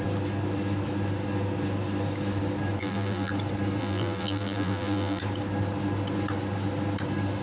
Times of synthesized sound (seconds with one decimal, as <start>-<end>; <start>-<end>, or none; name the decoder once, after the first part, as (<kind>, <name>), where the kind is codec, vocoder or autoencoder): 2.8-3.3 (vocoder, BigVGAN v2); 3.8-5.2